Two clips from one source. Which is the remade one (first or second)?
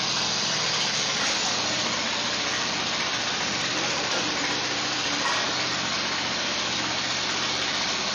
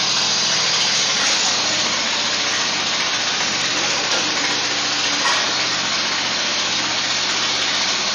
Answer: first